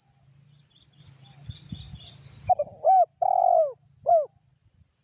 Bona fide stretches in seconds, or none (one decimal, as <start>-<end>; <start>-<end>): 0.0-5.0